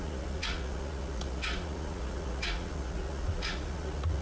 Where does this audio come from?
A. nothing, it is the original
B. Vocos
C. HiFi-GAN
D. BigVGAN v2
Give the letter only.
B